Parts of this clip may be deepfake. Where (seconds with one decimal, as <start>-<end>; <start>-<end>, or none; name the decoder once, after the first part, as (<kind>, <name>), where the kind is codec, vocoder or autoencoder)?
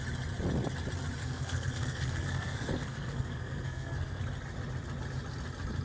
1.2-4.2 (codec, SNAC)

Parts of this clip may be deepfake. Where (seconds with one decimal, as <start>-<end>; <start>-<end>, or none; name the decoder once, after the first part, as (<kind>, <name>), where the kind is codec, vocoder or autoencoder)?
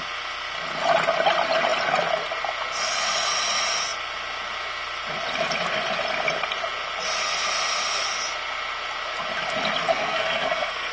9.9-10.9 (codec, SNAC)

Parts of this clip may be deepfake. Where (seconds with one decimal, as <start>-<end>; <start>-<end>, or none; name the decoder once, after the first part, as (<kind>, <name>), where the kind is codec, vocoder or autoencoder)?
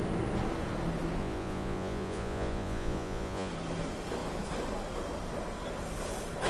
1.2-3.5 (vocoder, Vocos)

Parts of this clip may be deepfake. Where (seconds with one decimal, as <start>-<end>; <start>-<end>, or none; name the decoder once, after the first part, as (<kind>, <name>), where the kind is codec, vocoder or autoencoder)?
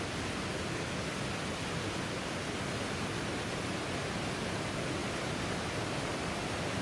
none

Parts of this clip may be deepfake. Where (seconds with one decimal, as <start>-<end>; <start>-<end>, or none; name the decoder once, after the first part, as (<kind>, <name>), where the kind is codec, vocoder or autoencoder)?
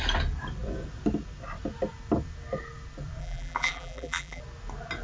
3.2-4.4 (vocoder, BigVGAN v2)